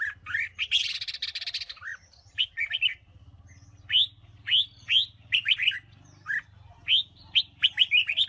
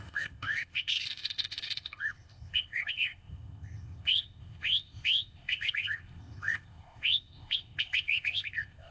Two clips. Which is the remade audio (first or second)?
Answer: second